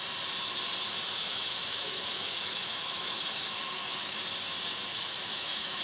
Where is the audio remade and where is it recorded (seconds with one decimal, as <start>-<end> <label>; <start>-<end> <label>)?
0.0-1.2 recorded; 1.2-4.2 remade; 4.2-4.9 recorded; 4.9-5.8 remade